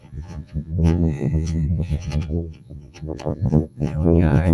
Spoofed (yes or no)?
yes